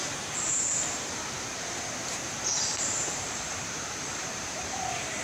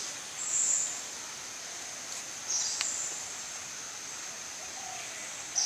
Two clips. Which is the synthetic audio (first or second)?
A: first